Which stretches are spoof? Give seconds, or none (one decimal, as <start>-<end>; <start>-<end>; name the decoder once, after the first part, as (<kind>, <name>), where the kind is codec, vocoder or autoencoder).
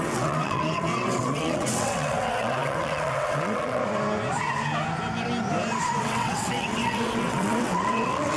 0.0-3.8 (vocoder, WaveNeXt); 6.0-8.4